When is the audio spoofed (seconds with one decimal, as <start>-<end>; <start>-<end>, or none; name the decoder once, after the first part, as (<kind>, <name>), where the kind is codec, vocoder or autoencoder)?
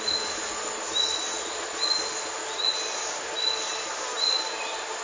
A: 1.3-1.8 (vocoder, Vocos)